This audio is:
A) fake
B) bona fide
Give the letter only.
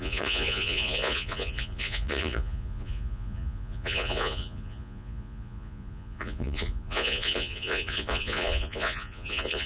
A